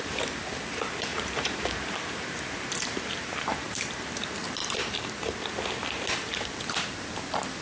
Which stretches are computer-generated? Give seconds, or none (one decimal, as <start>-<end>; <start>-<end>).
1.1-3.9